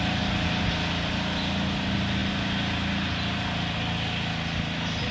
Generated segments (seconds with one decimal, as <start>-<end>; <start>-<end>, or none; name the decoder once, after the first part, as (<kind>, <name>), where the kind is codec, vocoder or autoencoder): none